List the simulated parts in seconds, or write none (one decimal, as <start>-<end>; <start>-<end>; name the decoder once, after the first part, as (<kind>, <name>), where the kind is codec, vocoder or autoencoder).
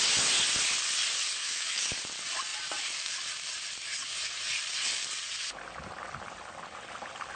1.4-1.9 (autoencoder, DAC-VAE)